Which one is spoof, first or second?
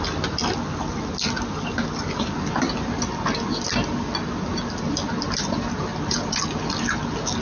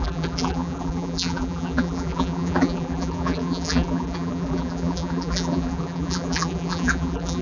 second